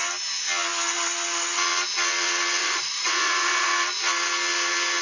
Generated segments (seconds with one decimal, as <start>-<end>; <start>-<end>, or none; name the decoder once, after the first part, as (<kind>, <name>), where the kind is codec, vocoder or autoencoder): 2.6-3.7 (vocoder, Vocos)